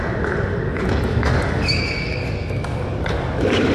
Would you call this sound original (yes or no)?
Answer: no